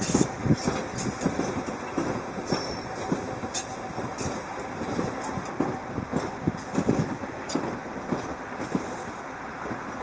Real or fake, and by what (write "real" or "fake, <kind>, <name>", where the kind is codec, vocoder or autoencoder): real